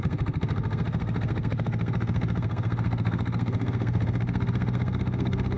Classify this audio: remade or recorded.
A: remade